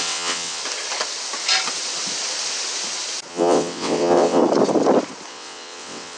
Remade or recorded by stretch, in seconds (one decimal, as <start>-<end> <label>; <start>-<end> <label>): 0.0-0.6 remade; 0.6-3.3 recorded; 3.3-4.4 remade; 4.4-5.3 recorded; 5.3-6.2 remade